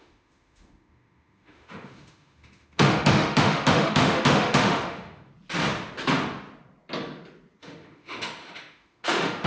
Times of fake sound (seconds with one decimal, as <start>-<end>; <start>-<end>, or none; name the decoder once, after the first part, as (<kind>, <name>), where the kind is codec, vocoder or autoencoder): 0.0-5.3 (autoencoder, DAC-VAE); 7.6-9.5